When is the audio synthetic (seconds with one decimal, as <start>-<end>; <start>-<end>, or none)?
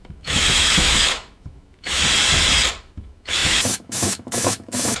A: 0.0-2.0; 2.8-5.0